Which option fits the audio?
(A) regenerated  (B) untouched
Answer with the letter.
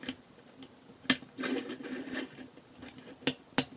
B